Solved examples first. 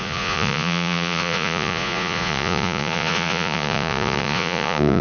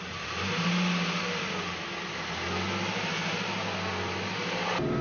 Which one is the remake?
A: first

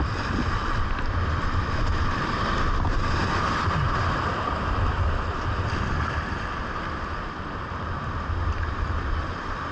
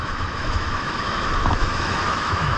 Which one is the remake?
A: second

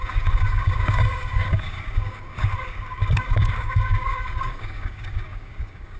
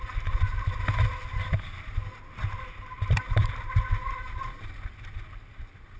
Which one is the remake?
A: first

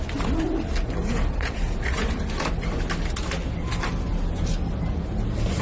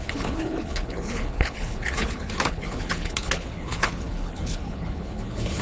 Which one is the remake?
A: second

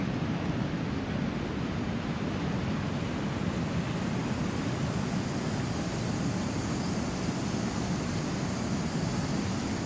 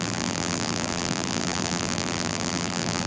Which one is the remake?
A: second